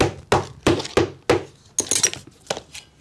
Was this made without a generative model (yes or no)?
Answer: yes